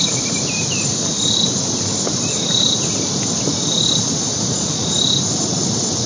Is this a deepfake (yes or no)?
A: no